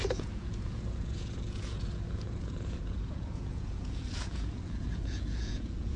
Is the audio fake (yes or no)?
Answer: yes